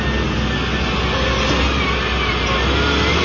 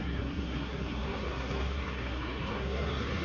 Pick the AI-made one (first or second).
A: second